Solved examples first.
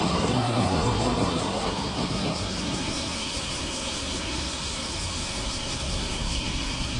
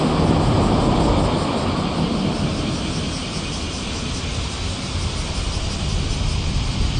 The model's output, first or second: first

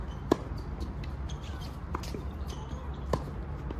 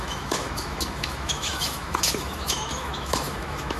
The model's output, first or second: second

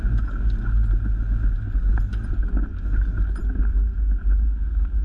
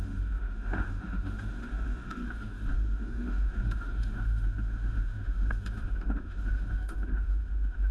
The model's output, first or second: second